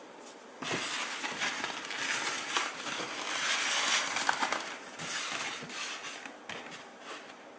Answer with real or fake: real